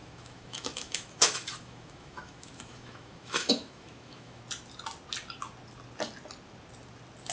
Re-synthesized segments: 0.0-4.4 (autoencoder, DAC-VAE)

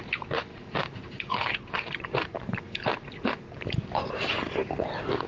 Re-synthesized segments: 0.0-4.6 (vocoder, BigVGAN v2)